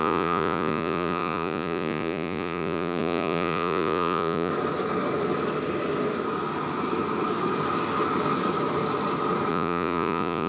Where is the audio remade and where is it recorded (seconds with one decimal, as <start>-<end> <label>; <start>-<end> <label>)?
0.0-4.5 remade; 4.5-9.5 recorded; 9.5-10.5 remade